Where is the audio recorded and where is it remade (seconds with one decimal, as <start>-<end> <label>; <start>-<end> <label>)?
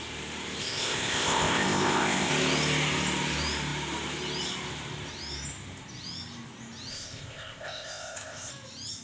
0.0-0.6 recorded; 0.6-2.3 remade; 2.3-6.9 recorded; 6.9-8.5 remade; 8.5-9.0 recorded